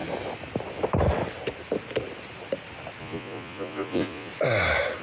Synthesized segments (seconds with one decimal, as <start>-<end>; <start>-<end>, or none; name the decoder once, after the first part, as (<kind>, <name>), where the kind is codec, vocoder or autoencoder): 3.0-4.3 (vocoder, Vocos)